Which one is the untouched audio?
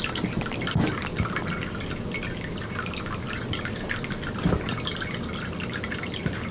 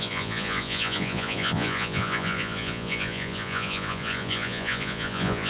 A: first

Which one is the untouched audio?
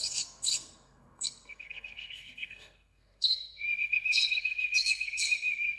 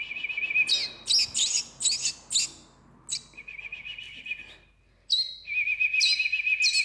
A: second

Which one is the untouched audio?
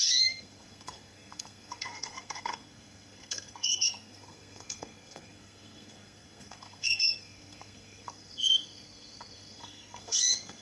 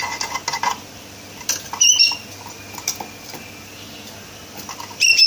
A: second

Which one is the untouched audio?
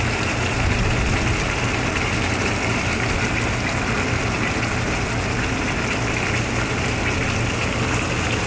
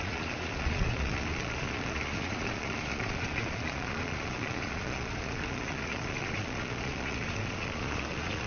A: first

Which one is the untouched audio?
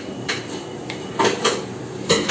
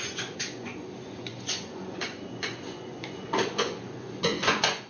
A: first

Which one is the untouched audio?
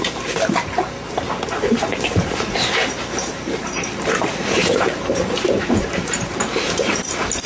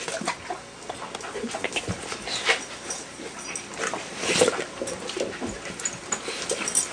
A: second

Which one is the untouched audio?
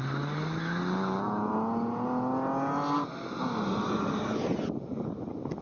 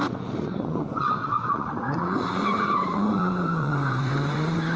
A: first